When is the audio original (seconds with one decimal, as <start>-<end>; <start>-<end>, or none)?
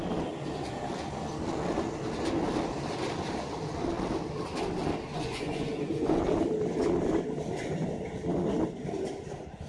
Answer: 0.0-5.1; 6.2-9.7